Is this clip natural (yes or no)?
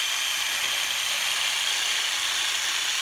yes